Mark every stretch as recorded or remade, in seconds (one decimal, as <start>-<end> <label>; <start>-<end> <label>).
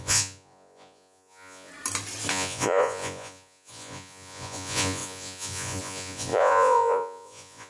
0.0-1.7 remade; 1.7-2.3 recorded; 2.3-7.7 remade